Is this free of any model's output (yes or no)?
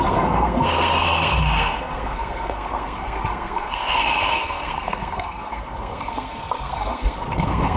no